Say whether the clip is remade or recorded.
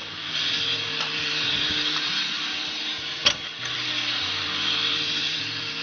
remade